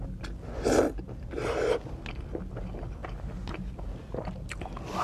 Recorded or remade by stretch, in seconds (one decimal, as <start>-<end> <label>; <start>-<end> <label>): 0.0-5.0 recorded